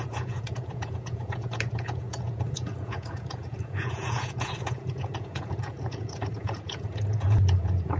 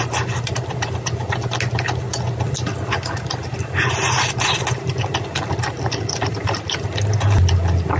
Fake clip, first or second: first